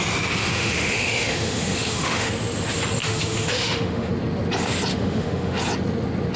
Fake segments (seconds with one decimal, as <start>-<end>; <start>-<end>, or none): 0.4-2.3; 3.0-4.1; 4.9-5.6